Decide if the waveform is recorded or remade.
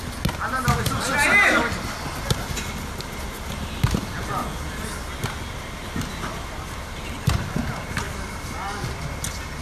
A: recorded